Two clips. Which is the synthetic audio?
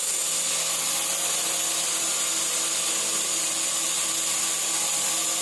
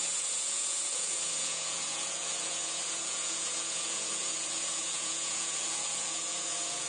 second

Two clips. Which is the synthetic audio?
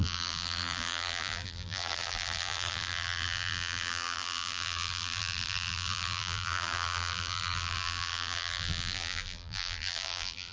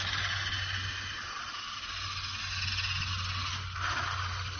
first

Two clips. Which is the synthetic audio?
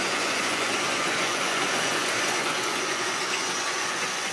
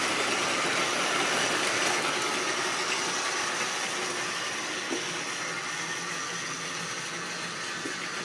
first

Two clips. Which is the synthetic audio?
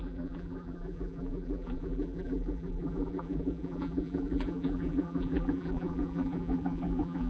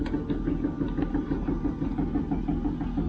first